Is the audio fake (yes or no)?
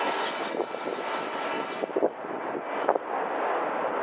no